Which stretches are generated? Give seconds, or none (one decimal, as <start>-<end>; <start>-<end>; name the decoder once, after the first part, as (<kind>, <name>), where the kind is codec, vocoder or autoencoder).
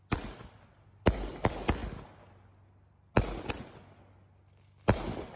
none